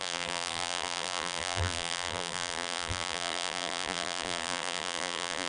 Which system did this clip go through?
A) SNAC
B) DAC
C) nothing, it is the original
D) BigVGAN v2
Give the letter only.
D